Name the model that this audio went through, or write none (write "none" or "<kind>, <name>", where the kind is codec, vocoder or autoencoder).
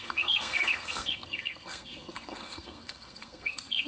codec, SNAC